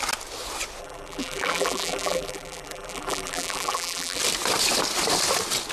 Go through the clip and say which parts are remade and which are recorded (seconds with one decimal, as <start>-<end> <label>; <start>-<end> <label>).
0.0-0.8 recorded; 0.8-4.2 remade; 4.2-5.7 recorded